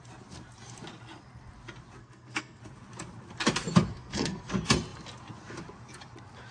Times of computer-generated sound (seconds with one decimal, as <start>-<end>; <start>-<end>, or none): 2.0-2.6; 3.9-4.5